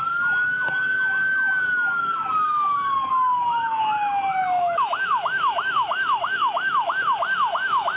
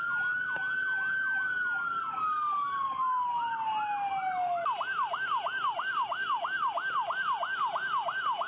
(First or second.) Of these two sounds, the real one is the second